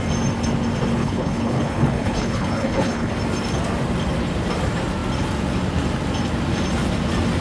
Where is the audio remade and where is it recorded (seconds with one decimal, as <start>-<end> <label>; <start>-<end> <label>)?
0.0-1.0 recorded; 1.0-3.1 remade; 3.1-7.4 recorded